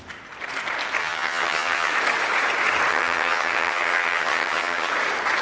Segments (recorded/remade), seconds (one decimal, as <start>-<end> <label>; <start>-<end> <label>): 0.0-1.0 recorded; 1.0-1.9 remade; 1.9-2.9 recorded; 2.9-4.9 remade; 4.9-5.4 recorded